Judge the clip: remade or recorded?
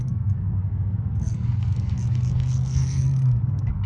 remade